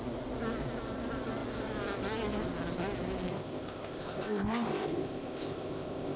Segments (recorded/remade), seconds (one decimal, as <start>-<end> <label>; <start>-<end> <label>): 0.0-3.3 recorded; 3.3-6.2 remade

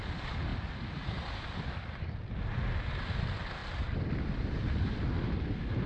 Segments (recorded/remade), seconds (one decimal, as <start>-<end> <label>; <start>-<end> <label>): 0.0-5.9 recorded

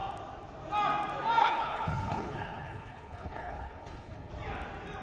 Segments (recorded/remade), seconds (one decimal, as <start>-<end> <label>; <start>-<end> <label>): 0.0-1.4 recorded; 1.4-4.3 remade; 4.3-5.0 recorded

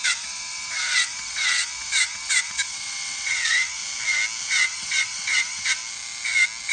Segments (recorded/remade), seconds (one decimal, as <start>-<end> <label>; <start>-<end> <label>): 0.0-3.8 remade; 3.8-4.5 recorded; 4.5-5.8 remade; 5.8-6.7 recorded

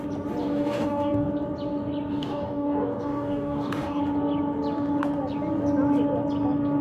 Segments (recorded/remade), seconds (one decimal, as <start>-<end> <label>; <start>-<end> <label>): 0.0-0.4 recorded; 0.4-1.3 remade; 1.3-2.1 recorded; 2.1-4.0 remade; 4.0-6.8 recorded